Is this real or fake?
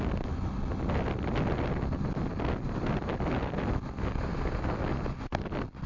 real